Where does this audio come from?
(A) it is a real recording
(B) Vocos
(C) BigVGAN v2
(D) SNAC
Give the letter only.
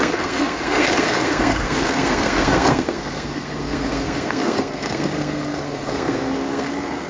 D